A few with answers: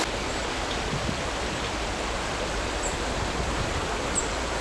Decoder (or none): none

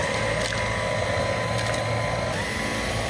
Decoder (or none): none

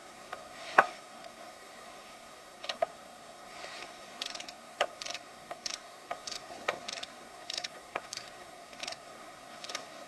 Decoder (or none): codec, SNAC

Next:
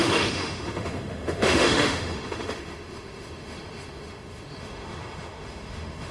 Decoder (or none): autoencoder, DAC-VAE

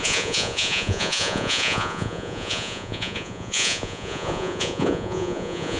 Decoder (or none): vocoder, Vocos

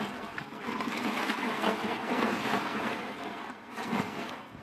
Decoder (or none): codec, SNAC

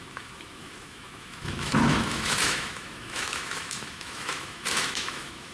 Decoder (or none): autoencoder, DAC-VAE